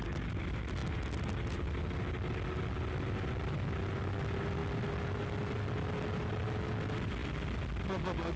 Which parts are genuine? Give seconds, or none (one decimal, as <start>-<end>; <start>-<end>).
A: 0.0-8.4